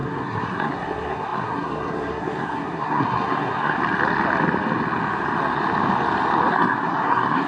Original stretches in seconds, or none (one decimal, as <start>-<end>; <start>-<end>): 3.8-6.5